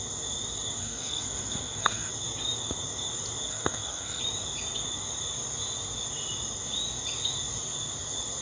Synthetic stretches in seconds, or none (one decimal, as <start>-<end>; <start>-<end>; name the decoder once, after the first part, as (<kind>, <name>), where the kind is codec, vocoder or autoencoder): 0.8-2.1 (codec, SNAC); 3.5-4.2